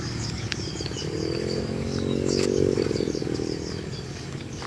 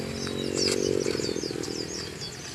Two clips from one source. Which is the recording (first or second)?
second